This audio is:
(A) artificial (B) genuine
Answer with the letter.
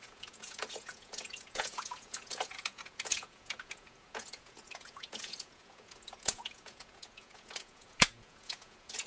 A